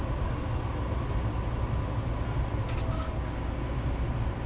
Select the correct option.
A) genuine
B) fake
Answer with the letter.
A